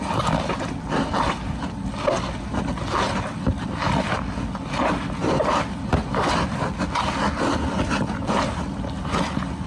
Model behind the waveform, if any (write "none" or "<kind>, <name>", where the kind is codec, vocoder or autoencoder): none